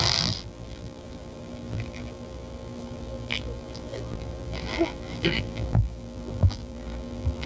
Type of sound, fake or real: fake